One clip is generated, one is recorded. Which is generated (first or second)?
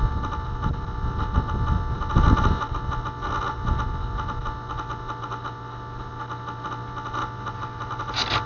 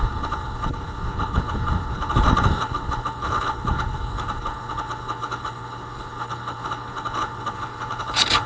second